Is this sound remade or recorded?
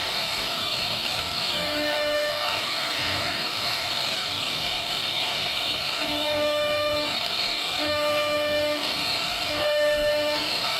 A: remade